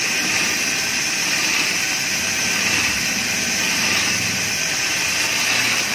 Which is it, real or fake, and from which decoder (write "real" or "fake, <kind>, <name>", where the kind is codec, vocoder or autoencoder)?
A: fake, vocoder, BigVGAN v2